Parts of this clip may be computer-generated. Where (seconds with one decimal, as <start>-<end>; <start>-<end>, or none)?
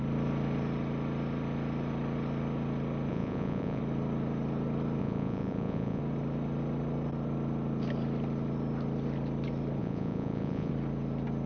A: 3.1-3.8; 5.0-6.0; 9.8-10.7